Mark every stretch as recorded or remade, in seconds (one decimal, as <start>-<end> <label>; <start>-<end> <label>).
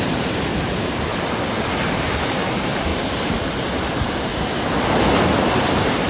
0.0-1.1 remade; 1.1-1.9 recorded; 1.9-4.3 remade; 4.3-5.4 recorded; 5.4-6.1 remade